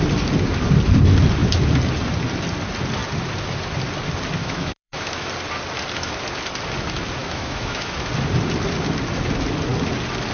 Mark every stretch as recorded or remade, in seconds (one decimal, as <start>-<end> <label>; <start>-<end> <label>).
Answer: 0.0-4.4 recorded; 4.4-5.3 remade; 5.3-7.2 recorded; 7.2-8.1 remade; 8.1-10.3 recorded